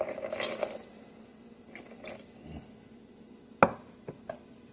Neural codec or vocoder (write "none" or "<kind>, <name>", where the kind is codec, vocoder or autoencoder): none